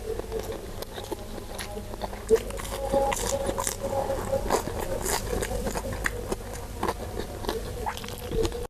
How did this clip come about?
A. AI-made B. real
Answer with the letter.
B